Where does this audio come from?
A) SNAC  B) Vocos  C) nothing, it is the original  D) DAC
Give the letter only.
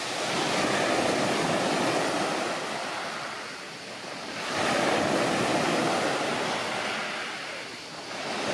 C